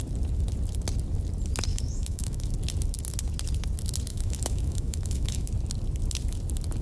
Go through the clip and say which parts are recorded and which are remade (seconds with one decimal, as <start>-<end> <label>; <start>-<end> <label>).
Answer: 0.0-1.7 recorded; 1.7-2.5 remade; 2.5-4.1 recorded; 4.1-5.5 remade; 5.5-6.8 recorded